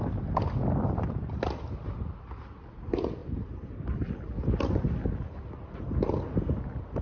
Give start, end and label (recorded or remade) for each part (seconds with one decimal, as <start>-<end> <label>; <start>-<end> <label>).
0.0-7.0 recorded